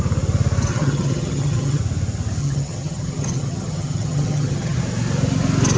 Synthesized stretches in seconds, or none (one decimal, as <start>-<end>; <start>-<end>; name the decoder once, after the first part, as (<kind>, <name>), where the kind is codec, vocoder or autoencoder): 0.7-1.8 (vocoder, HiFi-GAN); 2.4-4.8